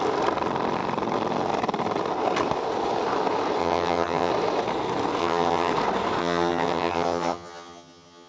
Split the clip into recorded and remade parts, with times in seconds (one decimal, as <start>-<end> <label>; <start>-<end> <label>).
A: 0.0-3.6 recorded; 3.6-4.3 remade; 4.3-5.2 recorded; 5.2-5.7 remade; 5.7-6.2 recorded; 6.2-8.3 remade